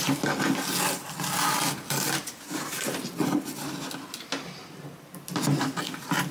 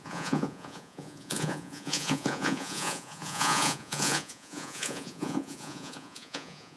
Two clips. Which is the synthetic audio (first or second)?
second